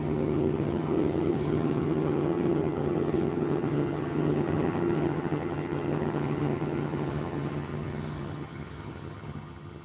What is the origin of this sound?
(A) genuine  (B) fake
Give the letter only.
B